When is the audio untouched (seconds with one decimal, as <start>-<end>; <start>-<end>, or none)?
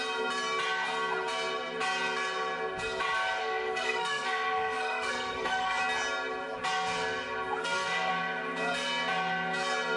0.0-3.4; 5.8-7.6; 8.1-10.0